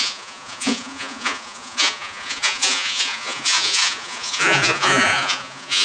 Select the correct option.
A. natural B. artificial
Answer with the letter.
B